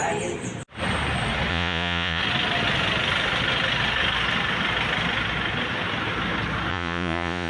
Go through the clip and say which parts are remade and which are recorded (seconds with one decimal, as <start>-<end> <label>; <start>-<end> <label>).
0.0-1.5 recorded; 1.5-2.2 remade; 2.2-6.7 recorded; 6.7-7.5 remade